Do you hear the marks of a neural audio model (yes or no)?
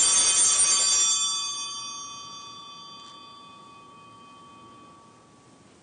no